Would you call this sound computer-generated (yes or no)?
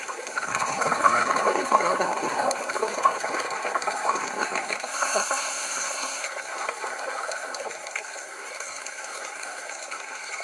yes